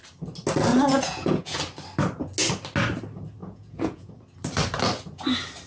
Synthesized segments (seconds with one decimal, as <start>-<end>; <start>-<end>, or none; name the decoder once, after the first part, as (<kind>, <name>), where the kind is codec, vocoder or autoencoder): 0.7-1.6 (vocoder, Vocos); 3.4-4.1